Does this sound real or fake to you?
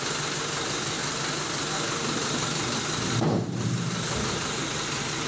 real